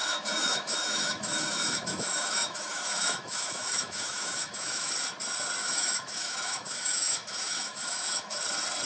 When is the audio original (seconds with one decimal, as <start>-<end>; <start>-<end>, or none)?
4.9-5.6; 8.4-8.8